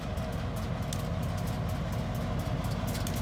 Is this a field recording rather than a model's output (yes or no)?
yes